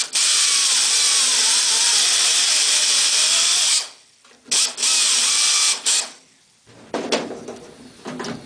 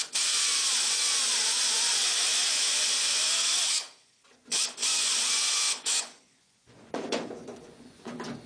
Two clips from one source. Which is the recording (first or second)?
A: first